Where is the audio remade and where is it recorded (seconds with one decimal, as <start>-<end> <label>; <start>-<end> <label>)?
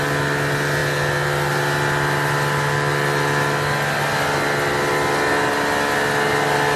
0.0-6.8 recorded